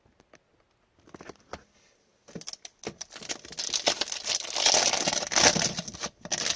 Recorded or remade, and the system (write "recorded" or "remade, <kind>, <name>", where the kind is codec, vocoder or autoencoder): recorded